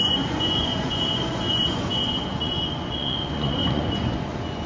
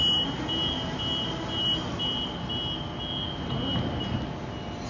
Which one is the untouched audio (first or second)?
second